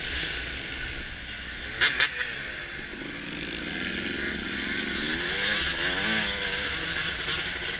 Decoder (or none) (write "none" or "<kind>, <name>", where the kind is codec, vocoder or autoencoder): none